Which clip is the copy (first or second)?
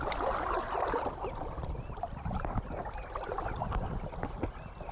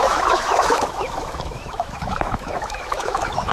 second